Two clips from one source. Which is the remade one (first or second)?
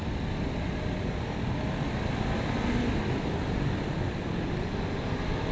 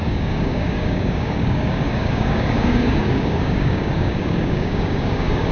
second